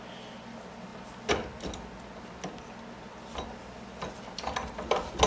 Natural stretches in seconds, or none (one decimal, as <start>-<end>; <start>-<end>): 0.0-5.3